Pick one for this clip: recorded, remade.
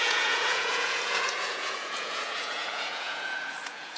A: remade